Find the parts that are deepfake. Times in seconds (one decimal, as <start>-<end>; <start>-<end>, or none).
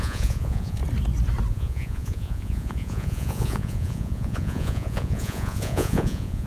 0.0-0.8; 1.5-6.5